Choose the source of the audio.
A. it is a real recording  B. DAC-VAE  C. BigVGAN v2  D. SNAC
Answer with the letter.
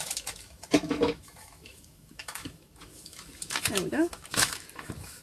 B